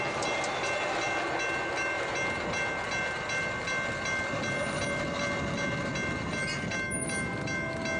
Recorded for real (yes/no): yes